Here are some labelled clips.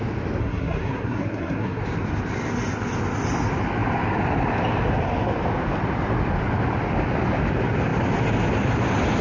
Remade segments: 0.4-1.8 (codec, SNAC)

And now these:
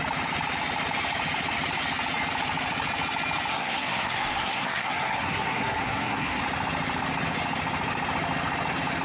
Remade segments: 3.5-6.4 (codec, SNAC)